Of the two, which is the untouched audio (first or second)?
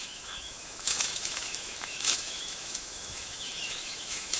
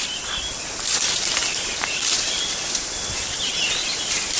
second